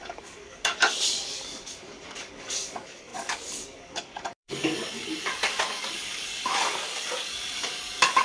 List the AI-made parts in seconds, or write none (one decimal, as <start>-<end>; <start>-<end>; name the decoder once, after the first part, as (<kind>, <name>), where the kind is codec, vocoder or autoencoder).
0.0-8.2 (codec, DAC)